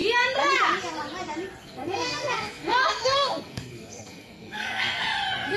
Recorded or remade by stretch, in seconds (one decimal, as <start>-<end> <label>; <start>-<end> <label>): 0.0-1.6 recorded; 1.6-5.0 remade; 5.0-5.6 recorded